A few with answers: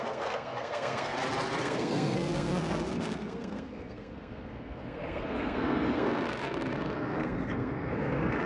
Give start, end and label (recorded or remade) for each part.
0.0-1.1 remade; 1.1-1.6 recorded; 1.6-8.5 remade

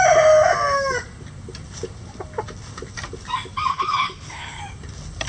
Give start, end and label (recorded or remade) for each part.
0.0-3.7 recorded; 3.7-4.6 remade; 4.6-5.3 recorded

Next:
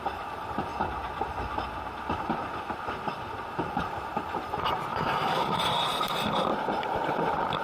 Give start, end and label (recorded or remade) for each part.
0.0-0.7 remade; 0.7-3.7 recorded; 3.7-4.9 remade; 4.9-5.6 recorded; 5.6-7.6 remade

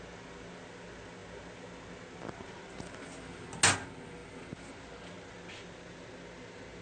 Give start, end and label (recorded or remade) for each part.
0.0-6.8 recorded

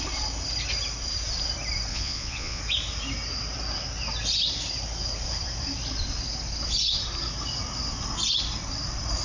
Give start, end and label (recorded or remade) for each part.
0.0-1.9 recorded; 1.9-2.6 remade; 2.6-9.2 recorded

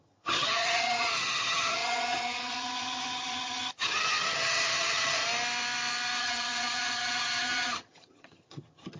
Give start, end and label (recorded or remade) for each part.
0.0-5.2 remade; 5.2-6.2 recorded; 6.2-9.0 remade

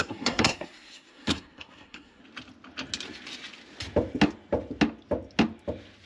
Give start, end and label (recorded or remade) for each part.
0.0-2.2 remade; 2.2-6.1 recorded